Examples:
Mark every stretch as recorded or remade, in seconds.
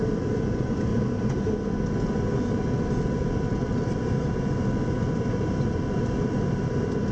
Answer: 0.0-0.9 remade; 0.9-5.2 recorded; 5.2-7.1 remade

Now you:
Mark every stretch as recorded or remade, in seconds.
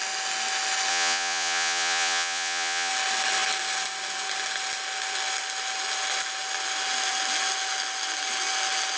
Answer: 0.0-0.9 recorded; 0.9-2.9 remade; 2.9-9.0 recorded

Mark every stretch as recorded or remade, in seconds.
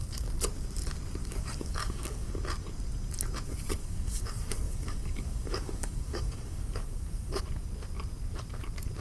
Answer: 0.0-1.2 recorded; 1.2-2.3 remade; 2.3-3.8 recorded; 3.8-7.4 remade; 7.4-9.0 recorded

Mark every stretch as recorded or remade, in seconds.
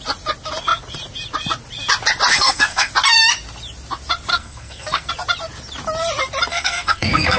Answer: 0.0-2.3 recorded; 2.3-2.9 remade; 2.9-4.3 recorded; 4.3-5.1 remade; 5.1-6.5 recorded; 6.5-7.4 remade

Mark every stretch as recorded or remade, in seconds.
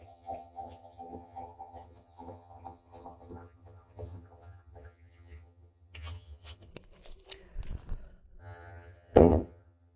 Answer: 0.0-6.7 remade; 6.7-8.4 recorded; 8.4-10.0 remade